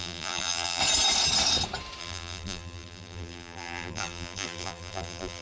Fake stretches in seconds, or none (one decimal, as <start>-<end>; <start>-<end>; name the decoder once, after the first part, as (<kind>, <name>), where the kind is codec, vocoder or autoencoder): 0.0-0.8 (vocoder, BigVGAN v2); 2.0-5.4